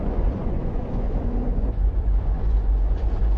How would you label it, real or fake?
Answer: fake